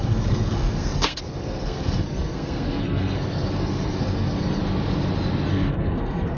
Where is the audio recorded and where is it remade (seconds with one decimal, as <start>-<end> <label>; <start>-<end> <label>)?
0.0-4.6 remade; 4.6-5.5 recorded; 5.5-6.4 remade